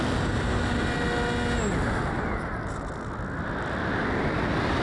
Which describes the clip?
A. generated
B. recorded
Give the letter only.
B